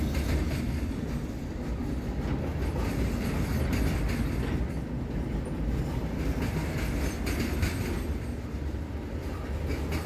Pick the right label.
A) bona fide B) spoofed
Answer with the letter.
A